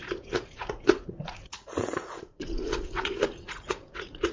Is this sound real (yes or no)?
no